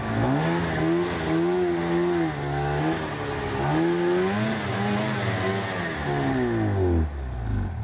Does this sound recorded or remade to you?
recorded